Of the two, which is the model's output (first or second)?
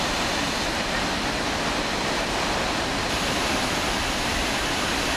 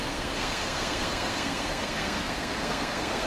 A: second